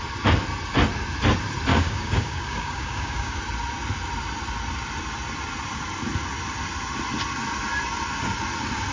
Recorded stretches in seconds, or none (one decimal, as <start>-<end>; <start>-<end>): 0.0-1.7; 3.4-8.9